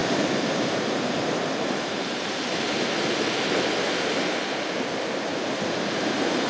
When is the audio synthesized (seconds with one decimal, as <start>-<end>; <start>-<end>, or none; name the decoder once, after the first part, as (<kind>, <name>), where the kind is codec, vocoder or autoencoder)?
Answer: 0.0-3.2 (vocoder, BigVGAN v2); 5.3-6.5